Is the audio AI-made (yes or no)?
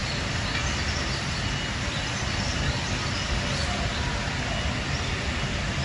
no